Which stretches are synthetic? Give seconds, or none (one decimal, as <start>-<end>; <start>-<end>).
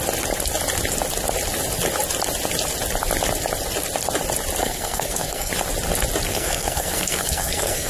4.6-5.5; 6.3-7.9